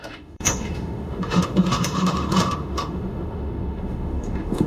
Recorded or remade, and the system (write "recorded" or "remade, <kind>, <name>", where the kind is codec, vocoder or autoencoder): remade, autoencoder, DAC-VAE